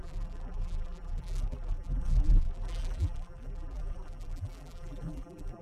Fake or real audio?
fake